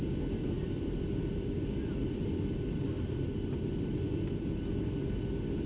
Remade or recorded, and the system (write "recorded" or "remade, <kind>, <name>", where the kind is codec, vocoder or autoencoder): recorded